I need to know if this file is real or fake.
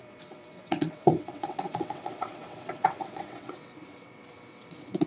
fake